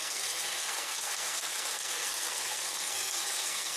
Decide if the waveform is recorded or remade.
remade